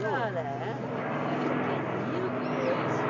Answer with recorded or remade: recorded